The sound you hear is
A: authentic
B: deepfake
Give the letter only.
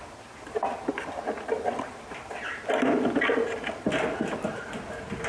A